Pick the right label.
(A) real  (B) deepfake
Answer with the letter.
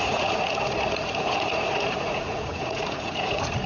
B